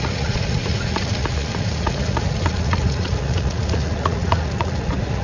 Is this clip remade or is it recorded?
remade